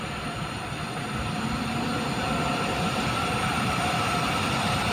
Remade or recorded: recorded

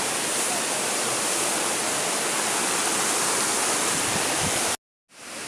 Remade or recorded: recorded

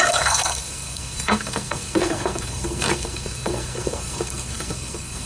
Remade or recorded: remade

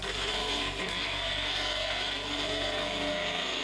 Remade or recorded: remade